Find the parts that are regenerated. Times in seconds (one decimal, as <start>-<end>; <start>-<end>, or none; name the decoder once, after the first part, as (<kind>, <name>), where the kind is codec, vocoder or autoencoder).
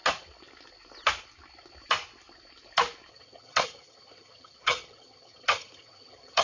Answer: 3.1-6.4 (vocoder, HiFi-GAN)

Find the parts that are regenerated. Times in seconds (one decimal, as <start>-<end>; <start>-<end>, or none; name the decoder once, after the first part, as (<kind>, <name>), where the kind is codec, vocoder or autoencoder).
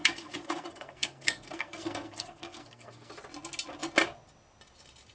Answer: 0.0-3.1 (codec, SNAC)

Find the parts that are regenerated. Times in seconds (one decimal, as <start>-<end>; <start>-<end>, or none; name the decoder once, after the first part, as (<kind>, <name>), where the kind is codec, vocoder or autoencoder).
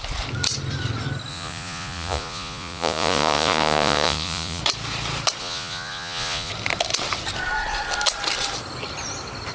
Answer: 1.3-4.6 (vocoder, Vocos); 5.4-6.5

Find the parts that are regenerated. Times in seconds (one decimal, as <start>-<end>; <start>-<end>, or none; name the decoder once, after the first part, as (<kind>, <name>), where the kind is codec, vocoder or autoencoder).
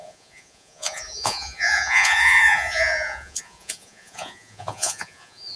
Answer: 0.0-5.6 (vocoder, Vocos)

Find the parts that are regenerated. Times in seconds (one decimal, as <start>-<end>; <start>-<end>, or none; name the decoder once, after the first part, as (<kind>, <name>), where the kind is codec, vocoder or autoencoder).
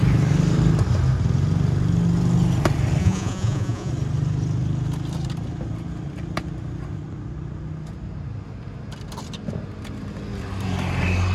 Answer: 3.0-3.9 (vocoder, Vocos)